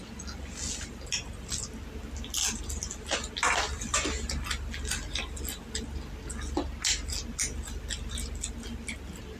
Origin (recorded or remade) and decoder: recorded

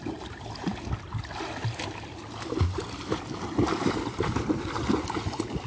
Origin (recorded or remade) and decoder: recorded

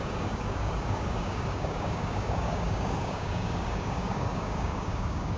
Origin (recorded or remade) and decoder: remade, codec, DAC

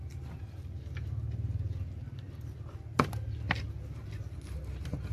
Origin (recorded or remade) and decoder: recorded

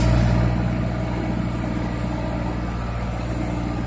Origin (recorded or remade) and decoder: recorded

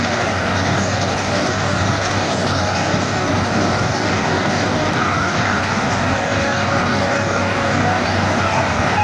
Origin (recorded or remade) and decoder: remade, codec, DAC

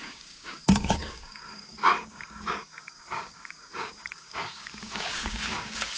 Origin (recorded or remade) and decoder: remade, codec, DAC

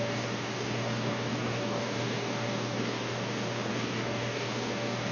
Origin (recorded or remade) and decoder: remade, codec, DAC